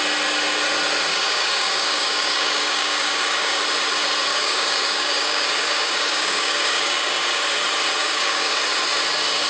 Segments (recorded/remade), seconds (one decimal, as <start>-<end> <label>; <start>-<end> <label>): 0.0-1.1 recorded; 1.1-3.6 remade; 3.6-4.3 recorded; 4.3-7.4 remade; 7.4-8.0 recorded; 8.0-8.6 remade; 8.6-9.5 recorded